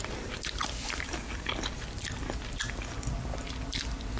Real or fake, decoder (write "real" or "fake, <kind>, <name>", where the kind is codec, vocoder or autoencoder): real